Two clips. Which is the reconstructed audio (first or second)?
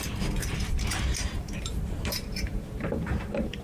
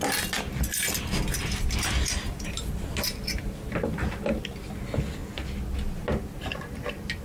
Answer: first